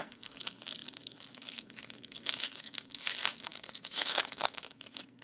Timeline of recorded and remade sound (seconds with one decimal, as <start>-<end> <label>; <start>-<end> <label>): 0.0-5.2 remade